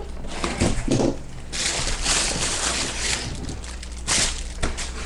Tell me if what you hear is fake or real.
real